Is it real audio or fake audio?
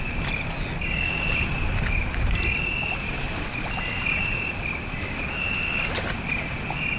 real